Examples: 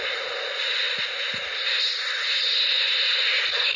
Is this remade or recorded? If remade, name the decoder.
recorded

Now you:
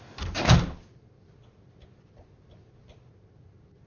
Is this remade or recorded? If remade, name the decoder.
recorded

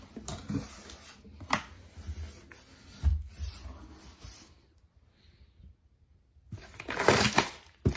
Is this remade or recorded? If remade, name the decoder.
recorded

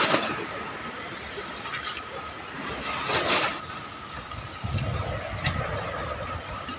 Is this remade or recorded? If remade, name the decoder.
recorded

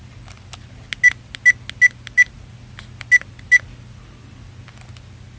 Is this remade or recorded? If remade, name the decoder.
recorded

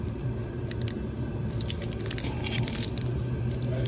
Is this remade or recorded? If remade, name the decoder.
recorded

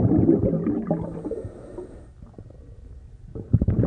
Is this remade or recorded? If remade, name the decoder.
recorded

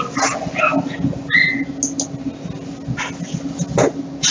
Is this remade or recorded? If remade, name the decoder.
recorded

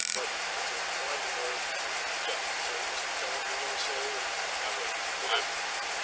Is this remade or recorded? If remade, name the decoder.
recorded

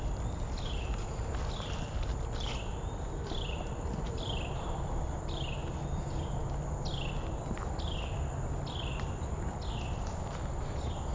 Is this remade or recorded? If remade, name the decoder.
remade, vocoder, BigVGAN v2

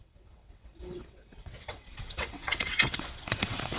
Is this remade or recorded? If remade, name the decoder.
remade, vocoder, WaveNeXt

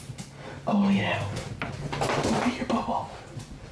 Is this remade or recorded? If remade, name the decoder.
recorded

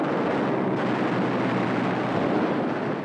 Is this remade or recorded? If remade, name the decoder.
recorded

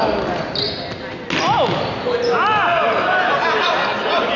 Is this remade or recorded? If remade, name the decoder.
recorded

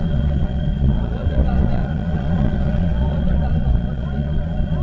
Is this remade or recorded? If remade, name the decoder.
remade, vocoder, Vocos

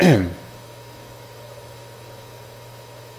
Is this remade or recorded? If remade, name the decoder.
remade, autoencoder, DAC-VAE